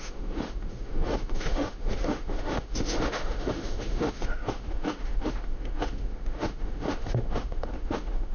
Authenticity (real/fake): fake